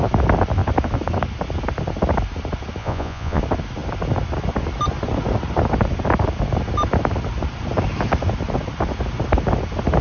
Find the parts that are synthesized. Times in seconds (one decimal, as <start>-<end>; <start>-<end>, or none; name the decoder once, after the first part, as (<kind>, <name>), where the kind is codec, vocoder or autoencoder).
2.8-3.4 (vocoder, Vocos)